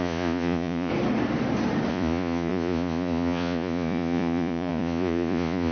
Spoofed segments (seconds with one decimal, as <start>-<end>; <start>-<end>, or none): 0.0-0.9; 1.9-5.7